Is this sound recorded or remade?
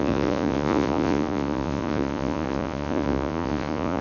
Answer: remade